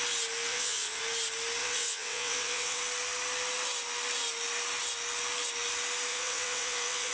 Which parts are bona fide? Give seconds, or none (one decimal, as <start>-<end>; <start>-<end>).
0.0-0.5; 1.0-1.6; 2.8-6.1